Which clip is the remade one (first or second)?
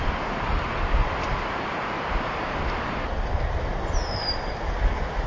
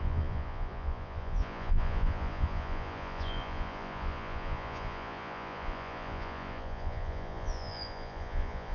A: second